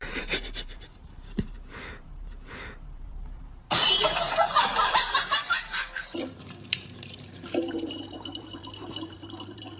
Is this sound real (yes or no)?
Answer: no